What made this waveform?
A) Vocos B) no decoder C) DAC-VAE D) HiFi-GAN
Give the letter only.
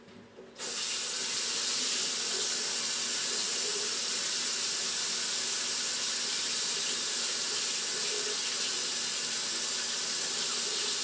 B